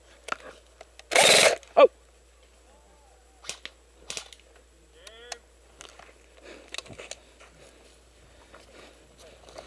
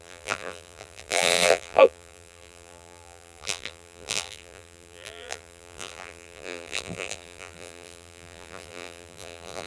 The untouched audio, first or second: first